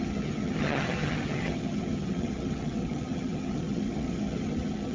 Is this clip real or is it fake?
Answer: fake